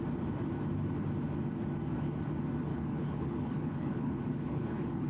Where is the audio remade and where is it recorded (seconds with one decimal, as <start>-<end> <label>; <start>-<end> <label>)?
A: 0.0-2.7 recorded; 2.7-5.1 remade